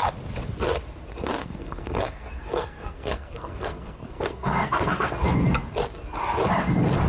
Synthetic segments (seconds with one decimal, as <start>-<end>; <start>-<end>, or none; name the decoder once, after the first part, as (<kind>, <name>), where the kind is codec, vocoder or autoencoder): 1.4-5.1 (codec, SNAC)